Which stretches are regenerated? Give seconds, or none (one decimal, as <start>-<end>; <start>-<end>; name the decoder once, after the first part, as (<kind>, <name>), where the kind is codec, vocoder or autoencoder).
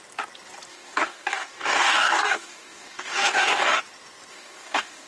0.7-3.8 (codec, DAC); 4.3-5.1